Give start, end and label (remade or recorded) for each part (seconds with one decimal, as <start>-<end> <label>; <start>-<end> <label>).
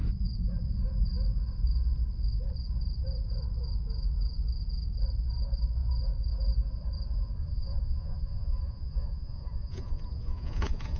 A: 0.0-7.4 recorded; 7.4-11.0 remade